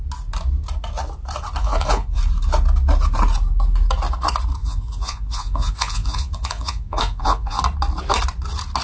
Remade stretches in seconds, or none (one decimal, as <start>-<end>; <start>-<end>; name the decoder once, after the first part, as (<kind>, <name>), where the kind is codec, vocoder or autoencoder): 1.6-2.2 (vocoder, Vocos); 4.6-7.6